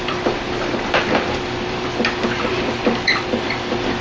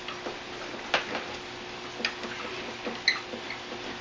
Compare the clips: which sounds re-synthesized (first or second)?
first